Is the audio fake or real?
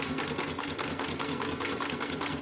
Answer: fake